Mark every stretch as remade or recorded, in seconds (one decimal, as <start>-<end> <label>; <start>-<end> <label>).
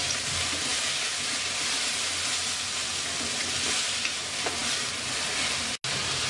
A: 0.0-6.3 recorded